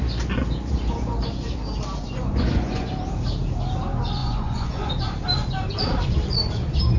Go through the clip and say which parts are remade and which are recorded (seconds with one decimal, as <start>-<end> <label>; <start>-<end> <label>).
0.0-2.0 recorded; 2.0-2.9 remade; 2.9-4.2 recorded; 4.2-4.9 remade; 4.9-7.0 recorded